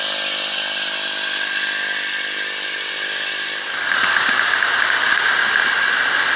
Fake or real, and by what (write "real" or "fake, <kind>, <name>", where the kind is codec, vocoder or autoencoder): real